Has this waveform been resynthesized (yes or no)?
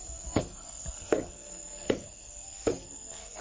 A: yes